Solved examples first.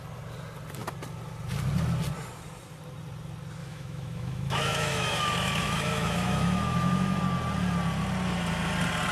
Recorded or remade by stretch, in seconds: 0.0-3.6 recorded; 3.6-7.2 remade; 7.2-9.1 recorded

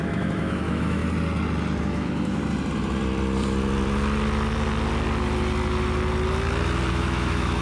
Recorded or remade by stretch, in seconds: 0.0-1.0 remade; 1.0-1.8 recorded; 1.8-2.4 remade; 2.4-6.9 recorded; 6.9-7.6 remade

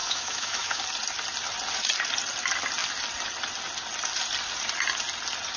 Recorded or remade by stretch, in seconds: 0.0-0.8 remade; 0.8-5.6 recorded

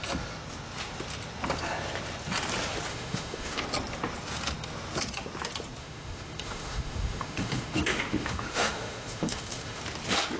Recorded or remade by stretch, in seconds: 0.0-2.9 recorded; 2.9-3.6 remade; 3.6-5.8 recorded; 5.8-9.8 remade; 9.8-10.4 recorded

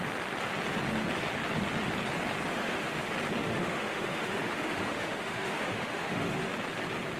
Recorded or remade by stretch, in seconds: 0.0-2.5 recorded; 2.5-3.0 remade; 3.0-3.4 recorded; 3.4-6.5 remade; 6.5-7.2 recorded

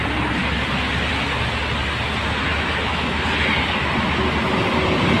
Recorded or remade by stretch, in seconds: 0.0-2.5 recorded; 2.5-3.2 remade; 3.2-5.2 recorded

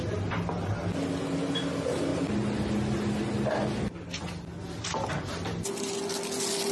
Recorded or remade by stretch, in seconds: 0.0-6.7 recorded